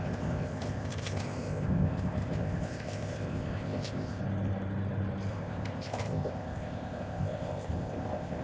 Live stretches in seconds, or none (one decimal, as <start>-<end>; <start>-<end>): 4.2-5.3